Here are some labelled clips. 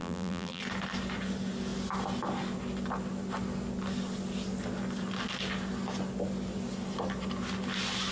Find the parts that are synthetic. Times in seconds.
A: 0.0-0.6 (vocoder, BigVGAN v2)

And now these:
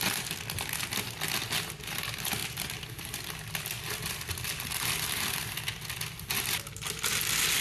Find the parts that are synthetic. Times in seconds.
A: none

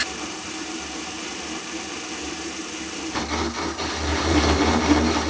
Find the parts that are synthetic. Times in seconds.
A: 0.0-3.2 (vocoder, BigVGAN v2); 4.1-4.8

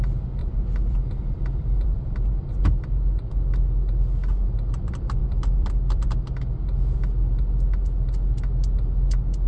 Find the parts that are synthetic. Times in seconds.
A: 0.4-2.5 (vocoder, BigVGAN v2); 5.2-6.4

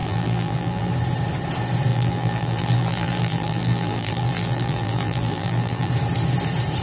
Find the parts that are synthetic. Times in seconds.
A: 0.0-0.9 (vocoder, BigVGAN v2); 1.9-5.9

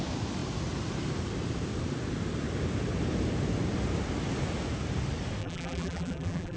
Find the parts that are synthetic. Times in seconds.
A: 5.4-6.6 (vocoder, BigVGAN v2)

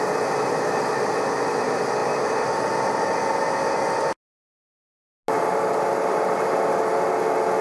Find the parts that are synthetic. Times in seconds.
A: none

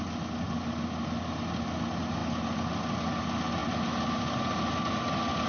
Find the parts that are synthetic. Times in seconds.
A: none